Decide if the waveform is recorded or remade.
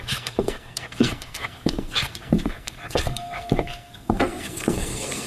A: remade